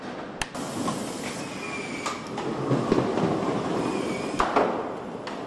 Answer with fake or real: real